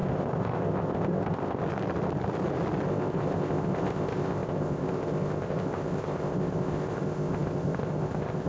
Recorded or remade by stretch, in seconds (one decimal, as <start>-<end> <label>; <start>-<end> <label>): 0.0-1.6 remade; 1.6-2.9 recorded; 2.9-8.5 remade